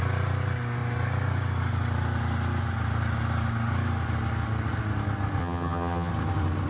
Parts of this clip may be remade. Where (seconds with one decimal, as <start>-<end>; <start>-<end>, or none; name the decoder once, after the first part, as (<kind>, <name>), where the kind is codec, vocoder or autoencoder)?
5.4-6.1 (vocoder, HiFi-GAN)